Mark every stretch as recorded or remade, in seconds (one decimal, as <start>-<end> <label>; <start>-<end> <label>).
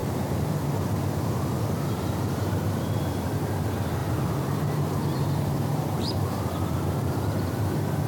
0.0-3.0 remade; 3.0-4.0 recorded; 4.0-7.2 remade; 7.2-8.1 recorded